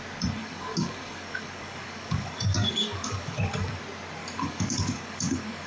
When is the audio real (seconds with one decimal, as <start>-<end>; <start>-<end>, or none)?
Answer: 0.0-0.4; 3.8-4.2